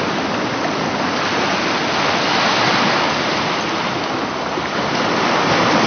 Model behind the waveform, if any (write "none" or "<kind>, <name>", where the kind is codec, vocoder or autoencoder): none